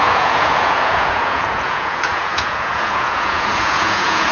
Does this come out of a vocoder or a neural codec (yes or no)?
yes